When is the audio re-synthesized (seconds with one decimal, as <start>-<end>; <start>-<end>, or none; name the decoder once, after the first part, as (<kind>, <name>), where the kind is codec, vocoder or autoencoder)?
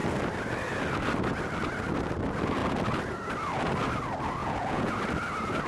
4.4-4.9 (vocoder, Vocos)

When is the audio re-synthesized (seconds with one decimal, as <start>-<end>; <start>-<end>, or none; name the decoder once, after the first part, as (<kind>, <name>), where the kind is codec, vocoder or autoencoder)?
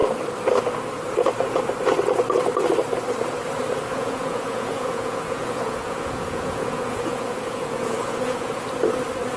3.9-8.5 (vocoder, Vocos)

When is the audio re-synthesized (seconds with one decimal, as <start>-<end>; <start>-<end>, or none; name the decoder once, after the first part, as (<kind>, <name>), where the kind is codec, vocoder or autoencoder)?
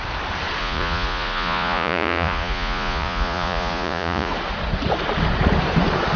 0.6-4.3 (vocoder, Vocos)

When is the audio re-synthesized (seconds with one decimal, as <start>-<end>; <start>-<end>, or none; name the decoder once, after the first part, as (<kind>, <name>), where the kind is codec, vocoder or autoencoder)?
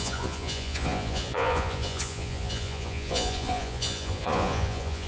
0.0-5.1 (vocoder, Vocos)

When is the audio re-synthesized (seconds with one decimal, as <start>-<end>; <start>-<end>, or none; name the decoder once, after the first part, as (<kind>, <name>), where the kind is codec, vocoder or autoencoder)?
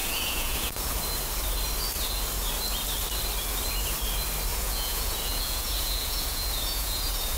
0.0-1.0 (vocoder, Vocos); 4.5-7.4